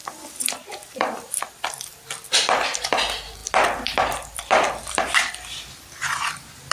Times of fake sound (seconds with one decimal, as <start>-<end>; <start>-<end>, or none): 0.0-1.4; 1.9-2.9; 3.4-5.3